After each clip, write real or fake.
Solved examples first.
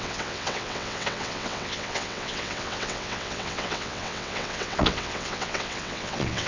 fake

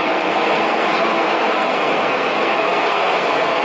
fake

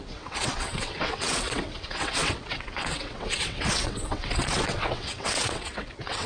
fake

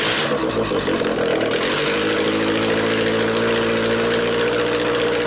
real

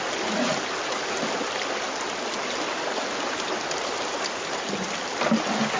real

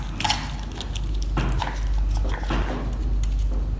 real